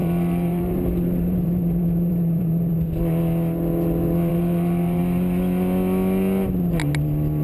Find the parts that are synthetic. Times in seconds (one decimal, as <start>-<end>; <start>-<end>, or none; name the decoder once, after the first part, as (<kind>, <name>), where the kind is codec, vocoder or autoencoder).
0.0-2.7 (vocoder, BigVGAN v2); 4.3-5.0